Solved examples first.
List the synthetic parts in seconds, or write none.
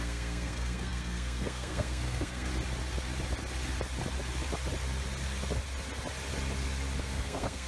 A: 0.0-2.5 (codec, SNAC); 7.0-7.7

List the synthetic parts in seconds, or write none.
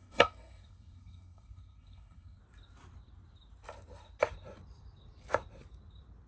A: 0.0-2.4 (codec, SNAC)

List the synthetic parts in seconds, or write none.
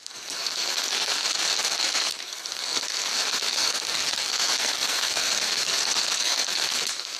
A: 0.0-7.2 (codec, SNAC)